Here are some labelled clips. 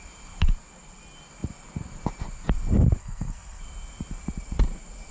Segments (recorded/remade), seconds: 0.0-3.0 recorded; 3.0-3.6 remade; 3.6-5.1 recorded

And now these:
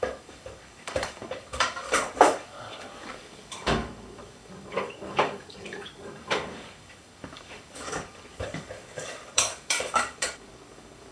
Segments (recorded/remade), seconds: 0.0-11.1 remade